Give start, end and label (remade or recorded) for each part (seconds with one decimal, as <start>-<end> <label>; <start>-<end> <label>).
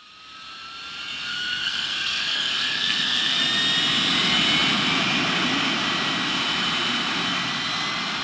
0.0-1.3 recorded; 1.3-3.4 remade; 3.4-8.2 recorded